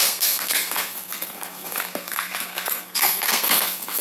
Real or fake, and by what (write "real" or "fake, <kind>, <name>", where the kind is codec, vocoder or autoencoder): fake, codec, SNAC